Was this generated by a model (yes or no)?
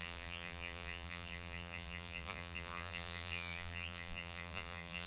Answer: yes